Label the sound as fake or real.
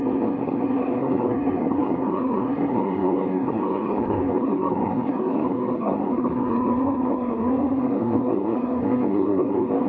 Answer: fake